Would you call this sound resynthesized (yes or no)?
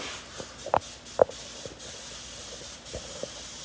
no